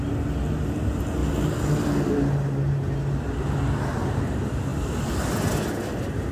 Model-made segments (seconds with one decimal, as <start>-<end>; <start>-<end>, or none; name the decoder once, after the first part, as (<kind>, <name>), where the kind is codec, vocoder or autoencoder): none